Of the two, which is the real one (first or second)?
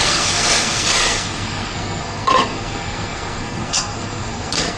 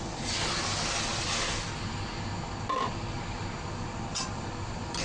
second